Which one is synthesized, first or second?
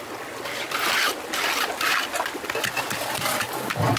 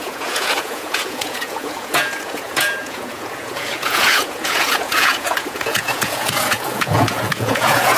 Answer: second